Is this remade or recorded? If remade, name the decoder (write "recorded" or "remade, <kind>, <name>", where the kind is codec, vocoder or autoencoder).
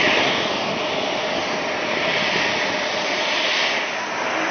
recorded